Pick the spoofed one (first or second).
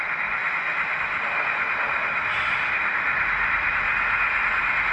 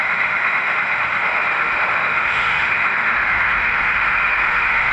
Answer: second